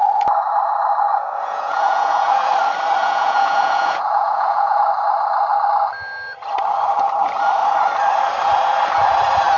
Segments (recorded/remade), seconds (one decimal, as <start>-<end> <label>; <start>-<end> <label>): 0.0-1.1 recorded; 1.1-2.5 remade; 2.5-3.0 recorded; 3.0-4.8 remade; 4.8-9.6 recorded